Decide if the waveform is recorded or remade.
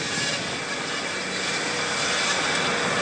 recorded